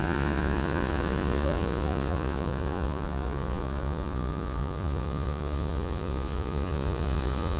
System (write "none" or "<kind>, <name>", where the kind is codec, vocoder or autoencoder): vocoder, Vocos